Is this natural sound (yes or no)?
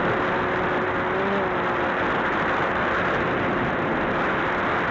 yes